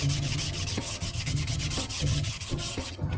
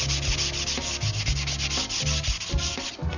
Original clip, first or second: second